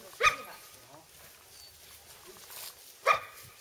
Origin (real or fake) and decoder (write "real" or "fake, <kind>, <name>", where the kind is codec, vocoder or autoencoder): real